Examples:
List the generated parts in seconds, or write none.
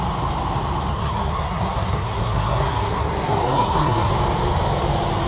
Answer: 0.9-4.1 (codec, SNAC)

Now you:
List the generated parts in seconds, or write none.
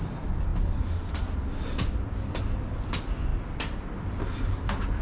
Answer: none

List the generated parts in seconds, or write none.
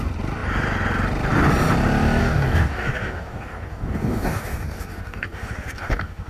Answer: 2.2-6.3 (codec, DAC)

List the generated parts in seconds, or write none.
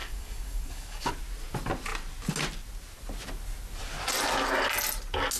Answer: 0.0-1.1 (codec, DAC)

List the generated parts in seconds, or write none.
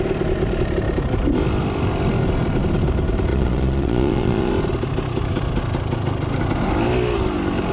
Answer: 3.3-4.5 (vocoder, Vocos)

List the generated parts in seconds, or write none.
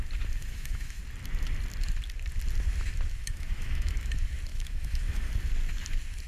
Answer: 0.4-1.0 (autoencoder, DAC-VAE); 3.2-4.1; 4.5-5.3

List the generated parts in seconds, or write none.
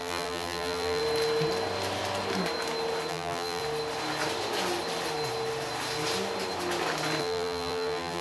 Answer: 0.0-1.0 (vocoder, BigVGAN v2); 3.1-3.6; 7.2-8.2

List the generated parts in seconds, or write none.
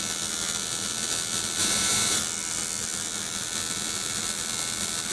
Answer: 1.6-2.2 (vocoder, BigVGAN v2)